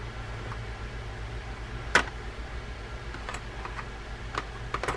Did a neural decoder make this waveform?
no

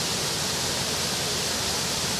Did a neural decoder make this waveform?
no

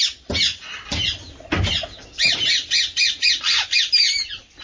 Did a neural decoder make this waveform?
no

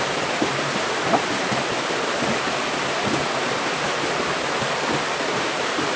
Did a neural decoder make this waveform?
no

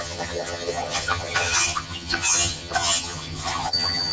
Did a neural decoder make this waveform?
yes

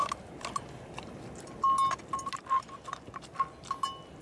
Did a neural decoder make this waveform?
no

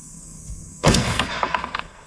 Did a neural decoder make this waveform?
yes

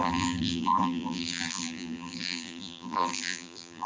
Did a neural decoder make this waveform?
yes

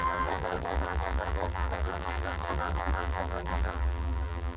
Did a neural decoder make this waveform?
yes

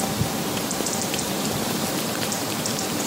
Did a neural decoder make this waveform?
yes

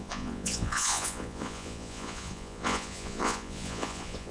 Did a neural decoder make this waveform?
yes